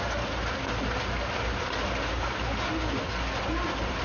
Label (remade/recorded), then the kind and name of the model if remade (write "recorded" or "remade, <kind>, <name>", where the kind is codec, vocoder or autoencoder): recorded